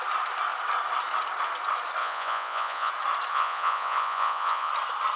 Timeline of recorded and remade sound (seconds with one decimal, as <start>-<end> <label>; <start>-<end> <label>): 0.0-2.0 recorded; 2.0-2.9 remade; 2.9-3.3 recorded; 3.3-4.7 remade; 4.7-5.2 recorded